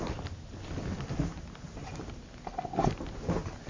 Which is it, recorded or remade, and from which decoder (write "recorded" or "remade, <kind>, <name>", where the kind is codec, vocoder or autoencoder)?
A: recorded